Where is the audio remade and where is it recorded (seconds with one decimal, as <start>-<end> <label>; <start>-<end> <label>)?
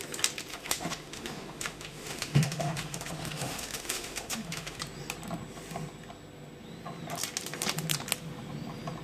0.0-0.5 recorded; 0.5-4.8 remade; 4.8-9.0 recorded